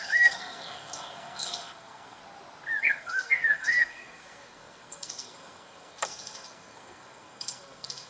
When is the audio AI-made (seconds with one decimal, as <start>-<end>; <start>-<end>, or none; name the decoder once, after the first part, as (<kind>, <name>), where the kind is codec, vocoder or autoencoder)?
0.0-2.2 (codec, SNAC); 2.8-8.1